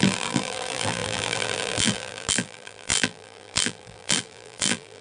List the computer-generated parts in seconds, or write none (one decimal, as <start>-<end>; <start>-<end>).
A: 0.0-5.0